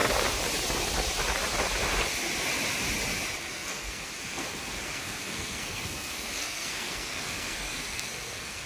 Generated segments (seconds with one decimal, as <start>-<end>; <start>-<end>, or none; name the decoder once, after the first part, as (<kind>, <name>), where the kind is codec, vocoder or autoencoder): 3.4-8.7 (codec, SNAC)